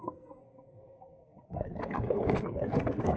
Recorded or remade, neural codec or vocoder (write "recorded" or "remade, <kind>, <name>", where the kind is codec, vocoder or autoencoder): remade, codec, SNAC